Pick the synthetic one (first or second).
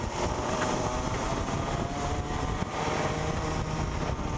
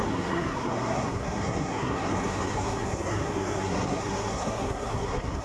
second